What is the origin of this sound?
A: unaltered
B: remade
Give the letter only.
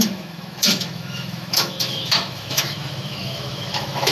B